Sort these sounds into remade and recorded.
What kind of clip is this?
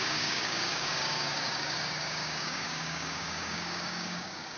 remade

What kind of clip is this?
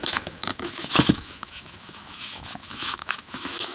remade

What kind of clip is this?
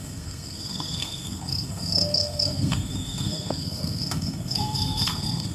remade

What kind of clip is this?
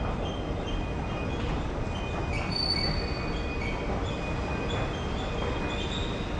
recorded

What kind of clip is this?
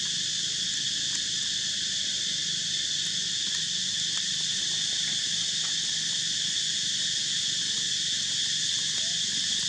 recorded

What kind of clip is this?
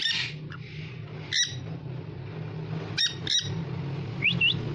recorded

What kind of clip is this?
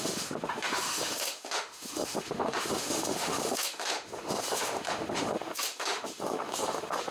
remade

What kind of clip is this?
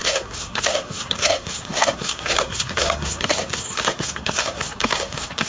remade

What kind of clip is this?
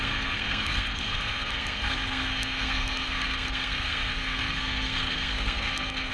remade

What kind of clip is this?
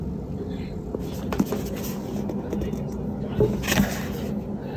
recorded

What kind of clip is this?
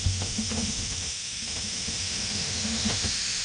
remade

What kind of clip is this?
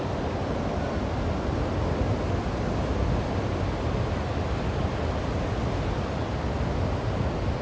recorded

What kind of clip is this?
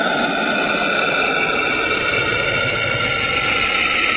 recorded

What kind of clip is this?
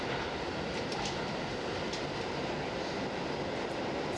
recorded